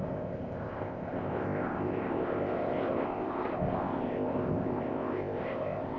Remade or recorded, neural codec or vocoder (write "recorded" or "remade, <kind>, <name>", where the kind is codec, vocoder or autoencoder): remade, codec, ZipCodec